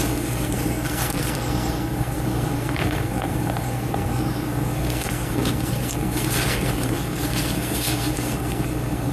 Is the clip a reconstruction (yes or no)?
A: yes